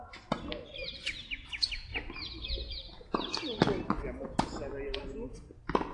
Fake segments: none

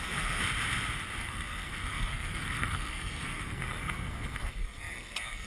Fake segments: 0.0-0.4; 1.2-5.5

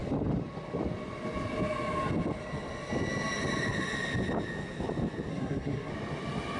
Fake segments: 5.3-5.9

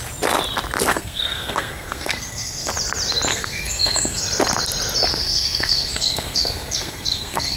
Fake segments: 0.9-2.7; 3.3-4.2; 5.1-7.6

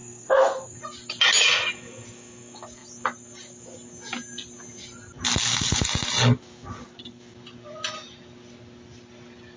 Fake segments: 0.0-0.8

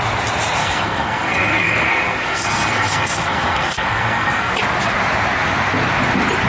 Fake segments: 0.6-4.5

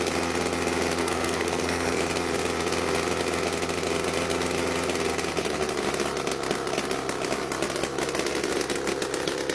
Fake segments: 1.0-2.0